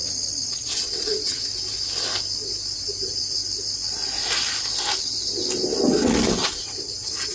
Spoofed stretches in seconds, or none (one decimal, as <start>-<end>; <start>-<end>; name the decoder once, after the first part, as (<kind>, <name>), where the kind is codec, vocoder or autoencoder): 0.5-1.5 (vocoder, WaveNeXt); 5.9-7.3